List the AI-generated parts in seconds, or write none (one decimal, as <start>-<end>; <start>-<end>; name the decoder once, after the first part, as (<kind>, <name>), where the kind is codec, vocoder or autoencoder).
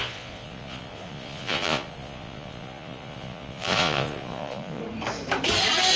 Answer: 0.0-4.8 (vocoder, Vocos)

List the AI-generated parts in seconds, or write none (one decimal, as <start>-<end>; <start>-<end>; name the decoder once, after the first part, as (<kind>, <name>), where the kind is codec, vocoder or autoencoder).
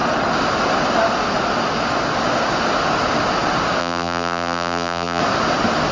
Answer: 3.8-5.2 (vocoder, BigVGAN v2)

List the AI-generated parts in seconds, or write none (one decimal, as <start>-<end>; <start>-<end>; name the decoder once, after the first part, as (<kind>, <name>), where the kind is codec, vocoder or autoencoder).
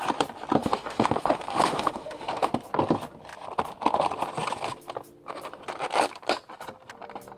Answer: 0.6-2.5 (autoencoder, DAC-VAE)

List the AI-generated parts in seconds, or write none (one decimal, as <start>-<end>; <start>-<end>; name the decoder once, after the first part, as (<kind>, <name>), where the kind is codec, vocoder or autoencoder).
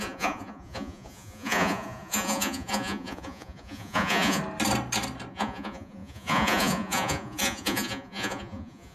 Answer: 0.0-4.4 (vocoder, Vocos); 5.3-8.9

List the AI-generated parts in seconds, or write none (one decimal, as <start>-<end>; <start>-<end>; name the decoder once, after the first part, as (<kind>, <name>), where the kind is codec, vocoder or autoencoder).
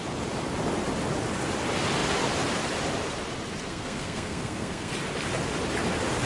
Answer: 3.7-4.9 (codec, SNAC)